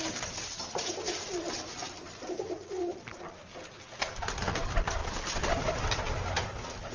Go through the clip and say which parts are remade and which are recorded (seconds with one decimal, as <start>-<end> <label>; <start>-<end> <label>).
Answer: 0.0-2.8 recorded; 2.8-3.6 remade; 3.6-5.0 recorded; 5.0-6.1 remade; 6.1-6.9 recorded